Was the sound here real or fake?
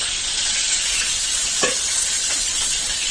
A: fake